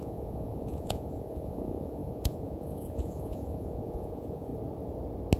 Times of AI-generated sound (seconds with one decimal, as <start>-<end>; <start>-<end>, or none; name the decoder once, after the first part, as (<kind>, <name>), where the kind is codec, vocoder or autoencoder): 0.0-4.5 (vocoder, Vocos)